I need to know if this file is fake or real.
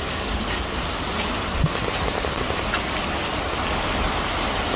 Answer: real